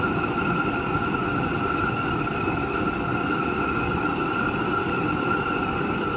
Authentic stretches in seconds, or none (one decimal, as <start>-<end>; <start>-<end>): 0.0-6.2